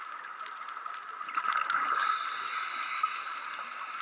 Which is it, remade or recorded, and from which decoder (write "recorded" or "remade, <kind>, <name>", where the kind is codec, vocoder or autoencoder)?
recorded